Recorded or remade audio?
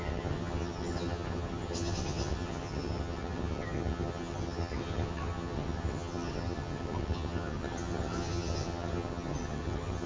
remade